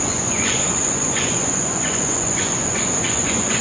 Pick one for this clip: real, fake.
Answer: fake